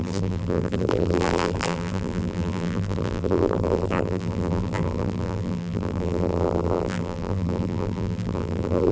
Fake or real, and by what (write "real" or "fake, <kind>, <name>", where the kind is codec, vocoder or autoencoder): fake, vocoder, BigVGAN v2